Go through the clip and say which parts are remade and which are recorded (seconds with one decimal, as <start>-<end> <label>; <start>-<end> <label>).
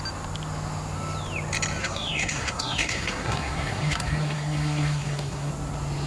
0.0-1.8 recorded; 1.8-5.5 remade; 5.5-6.1 recorded